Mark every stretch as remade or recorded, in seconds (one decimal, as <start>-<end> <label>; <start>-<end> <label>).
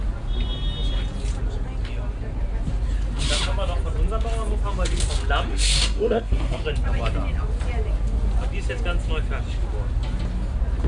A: 0.0-5.5 recorded; 5.5-6.6 remade; 6.6-10.9 recorded